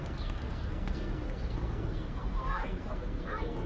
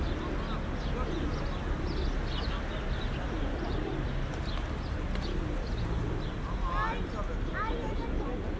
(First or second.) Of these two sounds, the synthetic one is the first